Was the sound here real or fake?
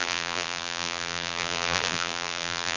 fake